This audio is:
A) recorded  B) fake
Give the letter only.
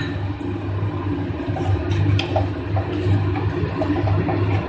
A